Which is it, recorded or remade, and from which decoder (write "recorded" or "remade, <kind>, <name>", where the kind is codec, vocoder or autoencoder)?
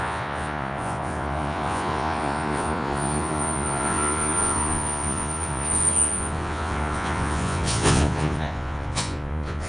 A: remade, vocoder, Vocos